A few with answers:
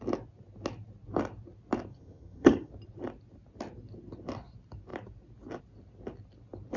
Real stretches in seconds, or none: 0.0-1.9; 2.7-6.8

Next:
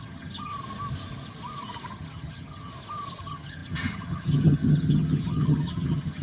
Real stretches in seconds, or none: 0.5-1.9; 2.7-3.2